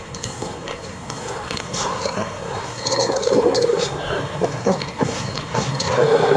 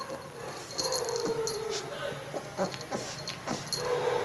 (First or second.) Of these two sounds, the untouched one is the second